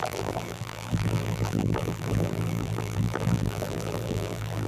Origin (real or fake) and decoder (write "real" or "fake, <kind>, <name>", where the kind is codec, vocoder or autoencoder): fake, vocoder, BigVGAN v2